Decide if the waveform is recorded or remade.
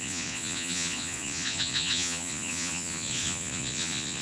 remade